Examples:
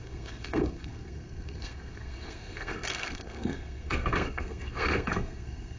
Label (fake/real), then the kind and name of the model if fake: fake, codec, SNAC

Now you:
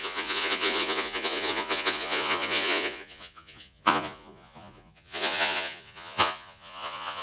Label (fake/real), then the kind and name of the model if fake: fake, vocoder, Vocos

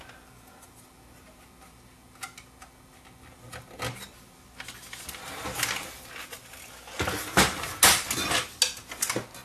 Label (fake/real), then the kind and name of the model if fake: real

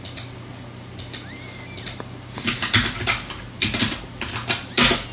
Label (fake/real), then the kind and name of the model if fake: real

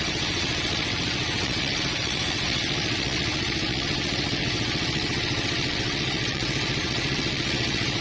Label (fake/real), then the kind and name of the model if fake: fake, vocoder, WaveNeXt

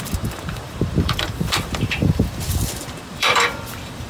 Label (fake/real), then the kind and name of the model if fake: fake, vocoder, BigVGAN v2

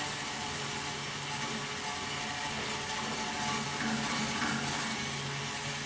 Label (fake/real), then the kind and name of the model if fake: real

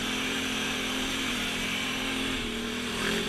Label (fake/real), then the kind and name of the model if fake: fake, vocoder, BigVGAN v2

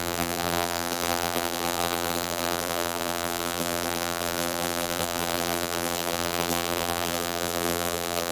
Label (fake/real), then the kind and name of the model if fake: fake, vocoder, BigVGAN v2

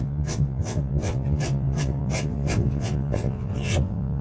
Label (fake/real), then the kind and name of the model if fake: fake, vocoder, WaveNeXt